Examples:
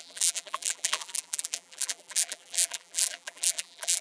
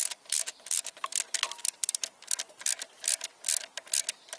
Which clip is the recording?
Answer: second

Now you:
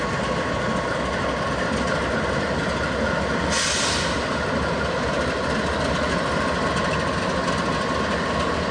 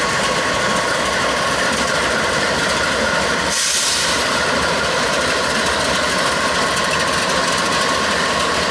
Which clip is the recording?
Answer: first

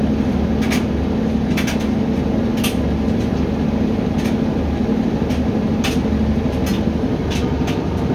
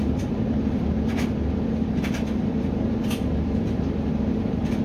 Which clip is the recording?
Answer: first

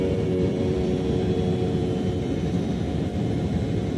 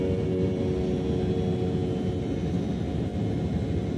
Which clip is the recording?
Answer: second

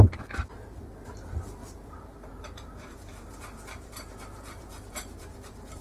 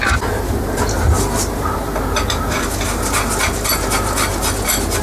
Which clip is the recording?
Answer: second